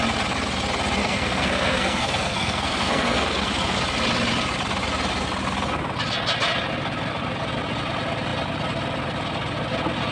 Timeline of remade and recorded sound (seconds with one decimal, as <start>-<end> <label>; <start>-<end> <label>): 0.0-1.0 recorded; 1.0-3.8 remade; 3.8-10.1 recorded